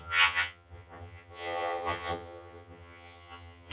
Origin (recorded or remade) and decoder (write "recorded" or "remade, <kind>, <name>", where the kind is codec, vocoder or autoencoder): remade, vocoder, HiFi-GAN